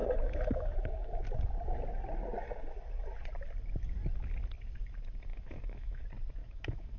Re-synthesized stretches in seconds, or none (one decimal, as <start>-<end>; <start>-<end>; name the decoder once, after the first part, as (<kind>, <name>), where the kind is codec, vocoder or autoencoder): 0.0-1.2 (autoencoder, DAC-VAE); 5.3-6.0; 6.4-7.0